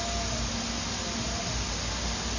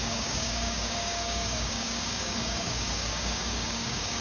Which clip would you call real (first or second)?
first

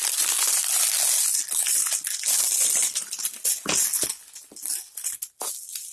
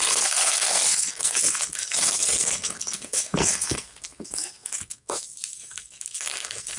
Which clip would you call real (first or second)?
first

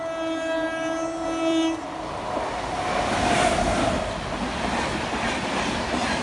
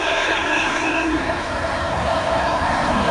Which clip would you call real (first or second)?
first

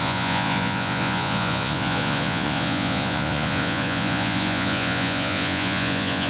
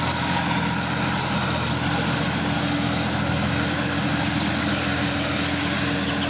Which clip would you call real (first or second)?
second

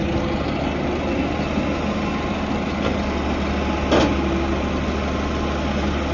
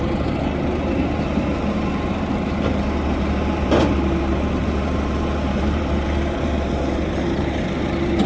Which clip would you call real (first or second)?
first